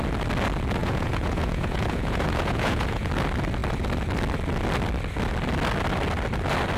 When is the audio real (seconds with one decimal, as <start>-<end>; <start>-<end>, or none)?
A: 0.0-0.8; 3.1-6.8